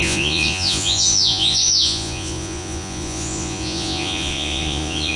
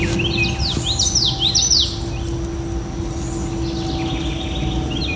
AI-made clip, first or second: first